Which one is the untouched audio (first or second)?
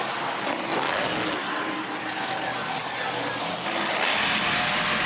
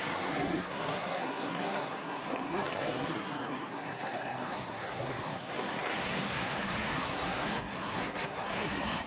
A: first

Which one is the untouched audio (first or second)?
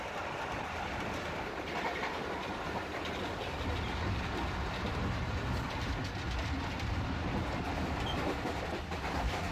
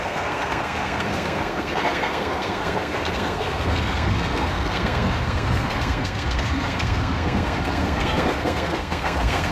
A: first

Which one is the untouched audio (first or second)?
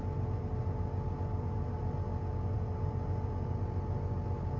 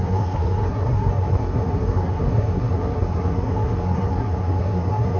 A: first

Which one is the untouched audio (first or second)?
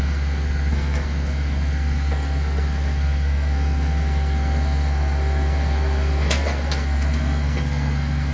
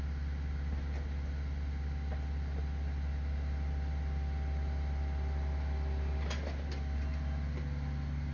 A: second